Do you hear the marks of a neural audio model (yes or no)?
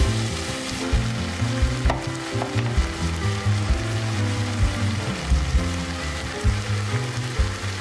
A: no